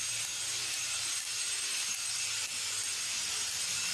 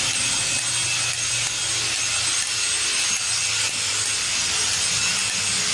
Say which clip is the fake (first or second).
first